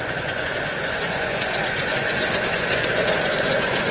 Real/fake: fake